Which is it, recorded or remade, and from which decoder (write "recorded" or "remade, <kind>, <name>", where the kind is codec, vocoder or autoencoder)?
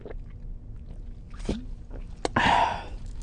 recorded